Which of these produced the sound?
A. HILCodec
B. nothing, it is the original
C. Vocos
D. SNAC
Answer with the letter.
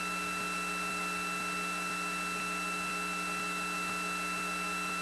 B